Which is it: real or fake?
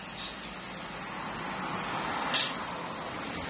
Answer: real